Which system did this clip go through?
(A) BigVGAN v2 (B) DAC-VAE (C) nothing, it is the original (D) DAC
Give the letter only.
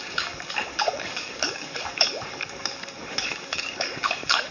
D